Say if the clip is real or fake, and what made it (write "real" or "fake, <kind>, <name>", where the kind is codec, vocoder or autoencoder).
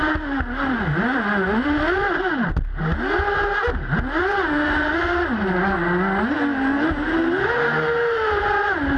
real